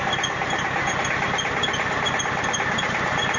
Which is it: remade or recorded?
recorded